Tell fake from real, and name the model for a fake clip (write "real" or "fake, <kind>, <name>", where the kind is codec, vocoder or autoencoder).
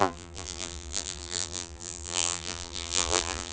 fake, vocoder, BigVGAN v2